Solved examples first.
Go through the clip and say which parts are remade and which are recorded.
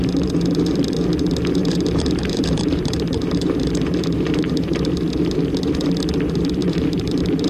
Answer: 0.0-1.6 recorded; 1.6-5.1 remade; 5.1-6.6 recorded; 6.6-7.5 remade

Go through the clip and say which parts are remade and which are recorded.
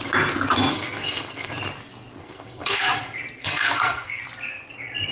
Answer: 0.0-0.7 recorded; 0.7-1.5 remade; 1.5-2.2 recorded; 2.2-2.8 remade; 2.8-3.4 recorded; 3.4-4.2 remade; 4.2-5.1 recorded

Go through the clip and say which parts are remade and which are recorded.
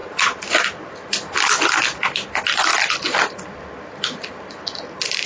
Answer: 0.0-0.6 remade; 0.6-5.3 recorded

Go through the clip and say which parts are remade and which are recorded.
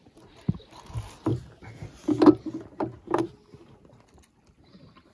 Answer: 0.0-5.1 recorded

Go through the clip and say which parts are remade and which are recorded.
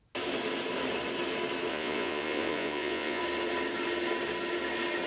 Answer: 0.0-1.7 recorded; 1.7-3.2 remade; 3.2-5.1 recorded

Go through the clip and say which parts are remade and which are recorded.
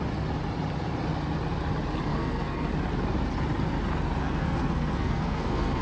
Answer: 0.0-2.1 recorded; 2.1-2.7 remade; 2.7-4.2 recorded; 4.2-5.8 remade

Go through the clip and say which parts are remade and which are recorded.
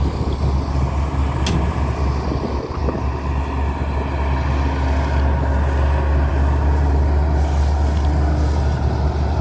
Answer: 0.0-9.4 recorded